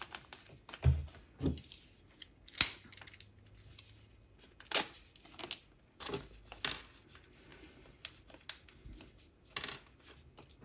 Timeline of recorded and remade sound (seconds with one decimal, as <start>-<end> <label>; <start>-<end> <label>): 0.0-10.6 recorded